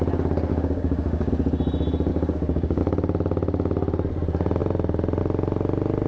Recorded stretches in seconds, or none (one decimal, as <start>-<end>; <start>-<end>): 0.0-0.5; 1.3-2.1; 2.8-6.1